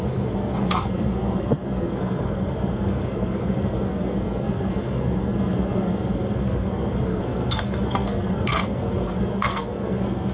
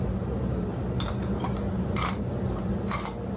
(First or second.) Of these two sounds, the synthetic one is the first